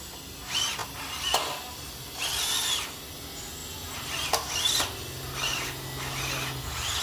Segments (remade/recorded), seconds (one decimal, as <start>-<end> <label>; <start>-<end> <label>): 0.0-7.0 recorded